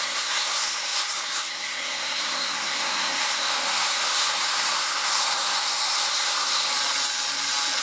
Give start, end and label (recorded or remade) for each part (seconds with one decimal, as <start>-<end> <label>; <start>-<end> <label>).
0.0-6.7 remade; 6.7-7.8 recorded